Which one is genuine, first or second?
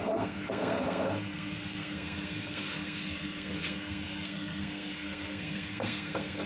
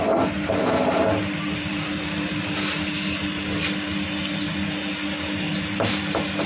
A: second